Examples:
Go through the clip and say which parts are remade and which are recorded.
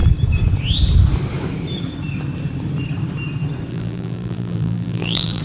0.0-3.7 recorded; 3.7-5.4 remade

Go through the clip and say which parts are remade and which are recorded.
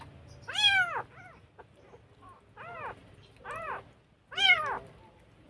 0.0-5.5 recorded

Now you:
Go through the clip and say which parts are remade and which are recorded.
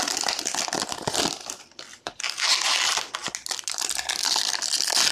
0.0-1.9 recorded; 1.9-2.4 remade; 2.4-5.1 recorded